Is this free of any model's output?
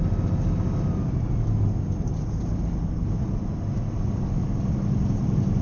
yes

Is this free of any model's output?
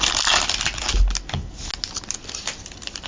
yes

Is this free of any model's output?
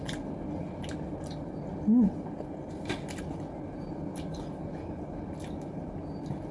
yes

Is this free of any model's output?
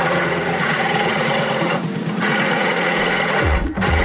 no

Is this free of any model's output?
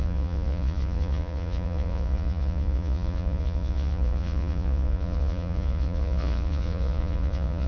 no